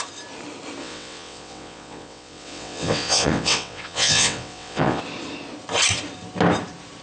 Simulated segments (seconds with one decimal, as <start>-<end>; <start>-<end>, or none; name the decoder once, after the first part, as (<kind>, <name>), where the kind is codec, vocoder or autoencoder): 0.8-5.0 (vocoder, WaveNeXt)